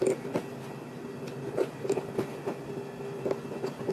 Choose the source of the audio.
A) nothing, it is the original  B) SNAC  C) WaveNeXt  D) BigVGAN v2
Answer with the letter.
A